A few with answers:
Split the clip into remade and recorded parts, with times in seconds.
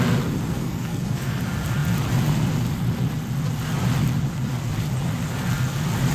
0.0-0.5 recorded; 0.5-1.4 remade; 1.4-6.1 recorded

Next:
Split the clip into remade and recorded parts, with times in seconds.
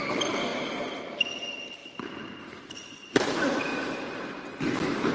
0.0-3.7 remade; 3.7-5.1 recorded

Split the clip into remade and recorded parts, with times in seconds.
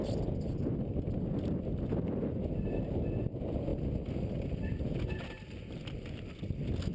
0.0-6.9 recorded